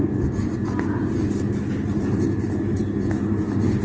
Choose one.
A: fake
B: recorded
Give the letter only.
B